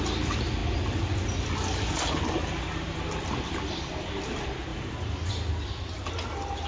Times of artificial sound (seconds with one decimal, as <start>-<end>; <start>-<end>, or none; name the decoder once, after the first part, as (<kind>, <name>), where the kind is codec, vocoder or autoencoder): 4.7-5.3 (vocoder, BigVGAN v2)